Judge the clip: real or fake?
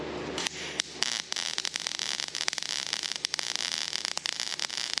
real